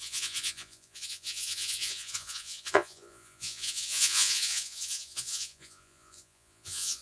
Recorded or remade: remade